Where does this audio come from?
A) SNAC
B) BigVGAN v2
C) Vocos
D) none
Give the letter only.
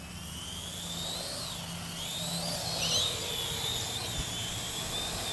D